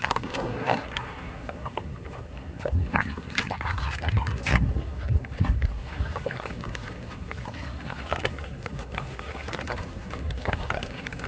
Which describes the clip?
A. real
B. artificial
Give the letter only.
B